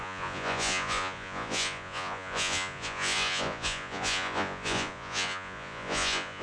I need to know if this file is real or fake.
fake